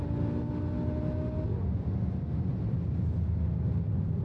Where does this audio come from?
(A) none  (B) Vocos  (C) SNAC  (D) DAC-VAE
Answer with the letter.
A